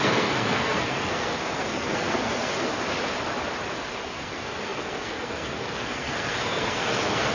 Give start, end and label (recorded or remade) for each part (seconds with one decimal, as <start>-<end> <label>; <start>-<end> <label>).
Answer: 0.0-2.7 remade; 2.7-3.9 recorded; 3.9-7.3 remade